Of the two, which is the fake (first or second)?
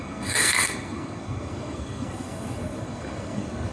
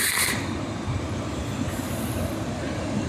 first